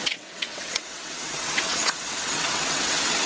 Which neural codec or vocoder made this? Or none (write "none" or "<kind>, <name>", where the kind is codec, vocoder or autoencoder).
vocoder, WaveNeXt